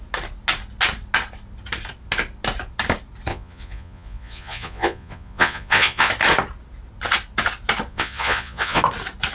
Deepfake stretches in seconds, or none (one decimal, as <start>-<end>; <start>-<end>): 3.3-6.1; 7.9-8.8